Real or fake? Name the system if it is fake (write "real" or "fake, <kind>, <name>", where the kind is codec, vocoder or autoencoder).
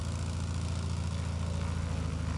real